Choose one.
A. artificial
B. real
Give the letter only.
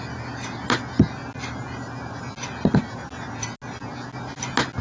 B